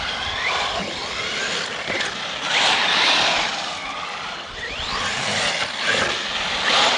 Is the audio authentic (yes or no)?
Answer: yes